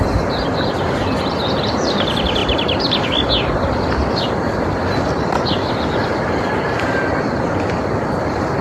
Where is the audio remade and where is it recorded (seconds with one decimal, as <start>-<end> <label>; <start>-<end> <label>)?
0.0-8.6 recorded